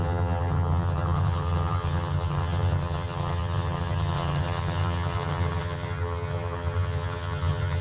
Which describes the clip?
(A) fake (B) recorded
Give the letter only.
A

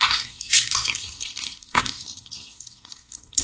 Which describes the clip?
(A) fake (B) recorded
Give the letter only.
A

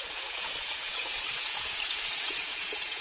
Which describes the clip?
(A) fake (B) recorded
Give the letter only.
A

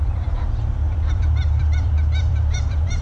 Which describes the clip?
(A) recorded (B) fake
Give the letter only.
B